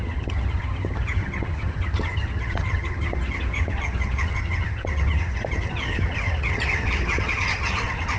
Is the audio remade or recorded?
remade